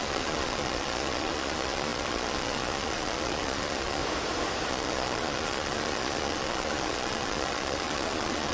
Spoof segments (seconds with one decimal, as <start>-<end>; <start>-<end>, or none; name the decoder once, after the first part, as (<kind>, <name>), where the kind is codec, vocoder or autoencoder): 0.0-4.0 (vocoder, Vocos); 4.7-8.5